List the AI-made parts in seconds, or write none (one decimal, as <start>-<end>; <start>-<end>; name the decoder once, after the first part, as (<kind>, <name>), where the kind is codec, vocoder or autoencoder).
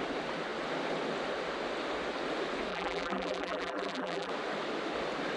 2.7-4.3 (vocoder, BigVGAN v2)